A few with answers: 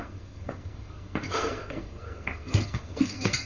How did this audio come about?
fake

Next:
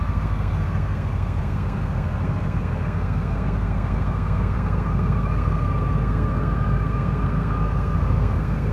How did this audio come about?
fake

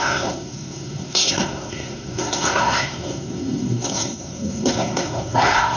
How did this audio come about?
fake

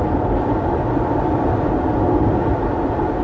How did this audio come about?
real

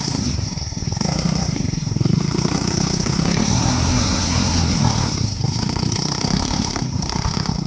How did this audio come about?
fake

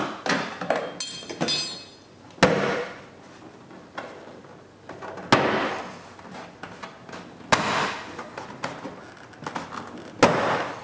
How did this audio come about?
real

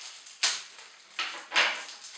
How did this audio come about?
real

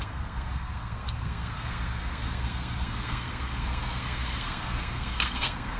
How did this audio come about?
fake